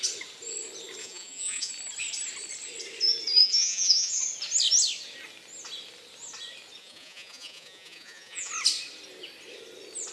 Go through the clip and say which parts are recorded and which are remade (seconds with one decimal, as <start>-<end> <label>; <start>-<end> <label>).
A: 0.0-1.0 recorded; 1.0-1.7 remade; 1.7-3.4 recorded; 3.4-4.2 remade; 4.2-6.8 recorded; 6.8-8.5 remade; 8.5-10.1 recorded